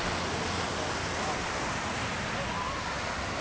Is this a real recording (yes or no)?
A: yes